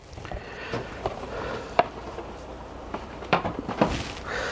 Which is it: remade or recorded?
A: remade